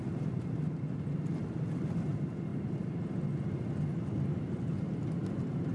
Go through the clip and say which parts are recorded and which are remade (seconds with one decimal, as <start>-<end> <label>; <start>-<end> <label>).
0.0-5.7 recorded